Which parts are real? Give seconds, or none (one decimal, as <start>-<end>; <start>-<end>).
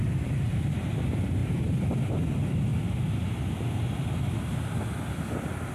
0.0-5.7